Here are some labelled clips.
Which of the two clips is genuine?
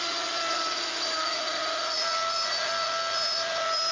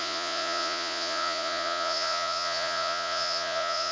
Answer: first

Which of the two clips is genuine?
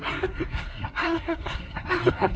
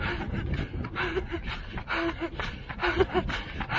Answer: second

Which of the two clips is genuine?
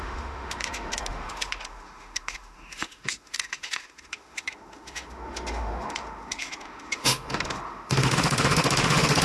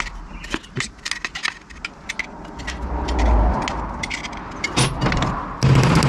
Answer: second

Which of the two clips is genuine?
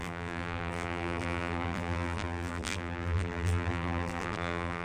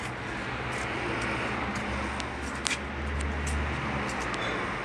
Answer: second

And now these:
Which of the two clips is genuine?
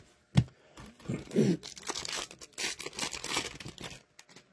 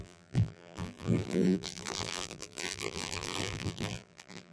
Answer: first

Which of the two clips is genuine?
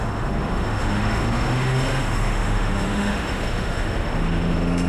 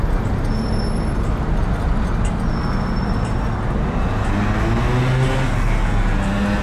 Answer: second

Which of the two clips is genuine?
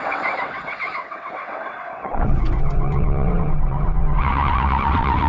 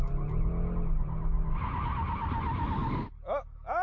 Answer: second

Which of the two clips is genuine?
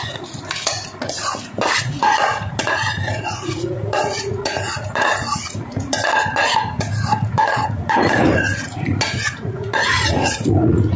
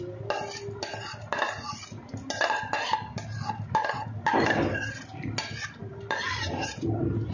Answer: second